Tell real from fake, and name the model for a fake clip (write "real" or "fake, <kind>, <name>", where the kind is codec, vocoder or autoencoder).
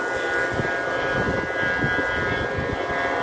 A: real